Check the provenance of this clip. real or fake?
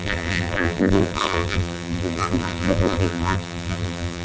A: fake